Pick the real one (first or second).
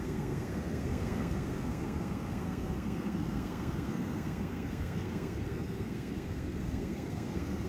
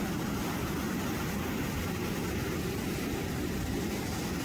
second